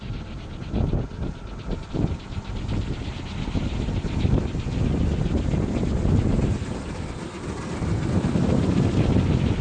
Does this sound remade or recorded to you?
recorded